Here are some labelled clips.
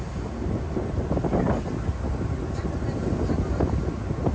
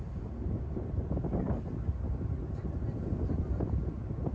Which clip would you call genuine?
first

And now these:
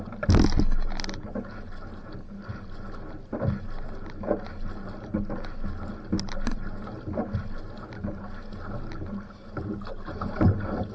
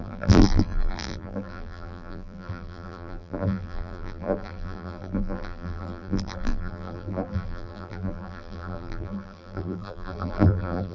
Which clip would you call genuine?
first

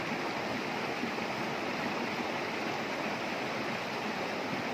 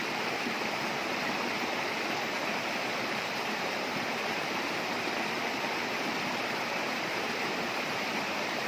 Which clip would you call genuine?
first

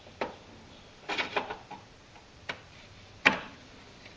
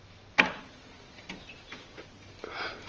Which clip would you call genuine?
second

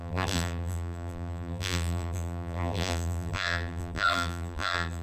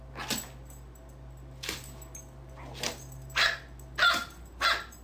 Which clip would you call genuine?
second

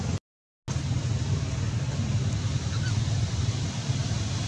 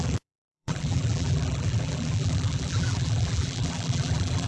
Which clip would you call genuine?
first